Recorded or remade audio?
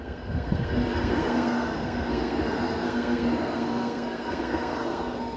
remade